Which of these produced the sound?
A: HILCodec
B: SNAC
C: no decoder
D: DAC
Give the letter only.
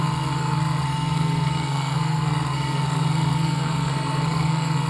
B